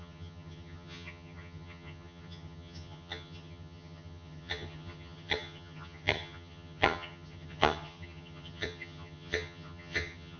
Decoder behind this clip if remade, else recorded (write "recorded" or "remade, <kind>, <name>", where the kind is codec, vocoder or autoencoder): remade, vocoder, HiFi-GAN